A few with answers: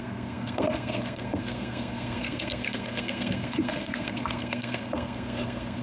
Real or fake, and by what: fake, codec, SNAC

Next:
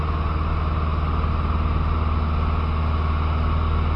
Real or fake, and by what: real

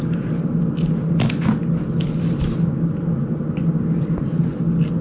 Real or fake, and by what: real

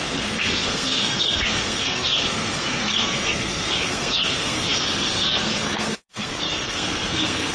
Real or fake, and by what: fake, codec, SNAC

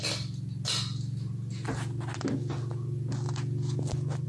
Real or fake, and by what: real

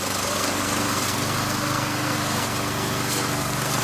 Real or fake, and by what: fake, codec, SNAC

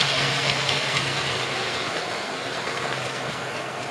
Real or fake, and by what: fake, codec, SNAC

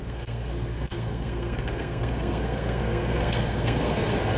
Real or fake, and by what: fake, codec, SNAC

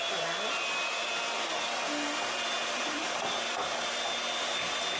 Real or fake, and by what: real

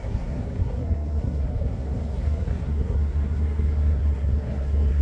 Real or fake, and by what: fake, codec, SNAC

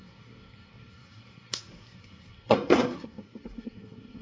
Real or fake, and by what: fake, codec, SNAC